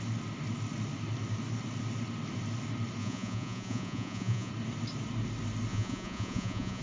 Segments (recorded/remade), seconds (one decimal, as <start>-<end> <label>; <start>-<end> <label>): 0.0-3.0 recorded; 3.0-4.5 remade; 4.5-5.7 recorded; 5.7-6.8 remade